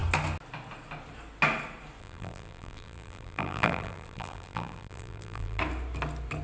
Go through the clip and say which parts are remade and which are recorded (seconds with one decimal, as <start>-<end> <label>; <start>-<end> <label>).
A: 0.0-2.0 recorded; 2.0-5.6 remade; 5.6-6.4 recorded